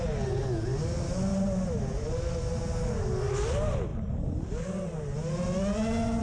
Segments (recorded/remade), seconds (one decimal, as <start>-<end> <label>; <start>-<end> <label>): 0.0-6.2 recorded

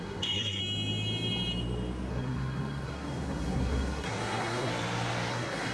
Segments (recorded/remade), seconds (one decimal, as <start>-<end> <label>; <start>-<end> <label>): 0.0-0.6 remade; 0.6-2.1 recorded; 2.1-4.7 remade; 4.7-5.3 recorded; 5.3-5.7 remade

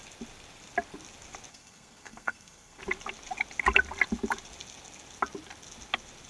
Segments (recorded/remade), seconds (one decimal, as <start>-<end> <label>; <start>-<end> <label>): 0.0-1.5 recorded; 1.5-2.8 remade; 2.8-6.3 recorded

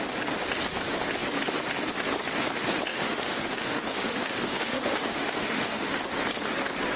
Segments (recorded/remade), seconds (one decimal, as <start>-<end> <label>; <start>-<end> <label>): 0.0-2.9 recorded; 2.9-6.0 remade; 6.0-7.0 recorded